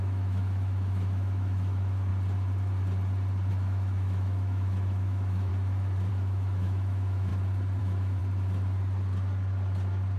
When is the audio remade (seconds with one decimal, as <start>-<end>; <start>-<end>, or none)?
0.0-2.1; 3.5-5.5; 6.1-7.3; 7.8-8.2